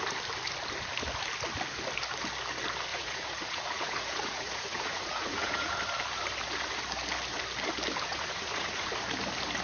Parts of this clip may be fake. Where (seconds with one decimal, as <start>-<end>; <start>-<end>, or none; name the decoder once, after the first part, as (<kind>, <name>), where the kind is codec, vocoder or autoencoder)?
2.9-5.7 (vocoder, Vocos); 8.1-8.9